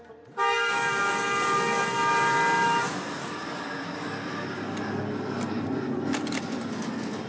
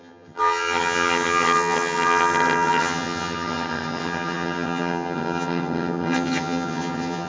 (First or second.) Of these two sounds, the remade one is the second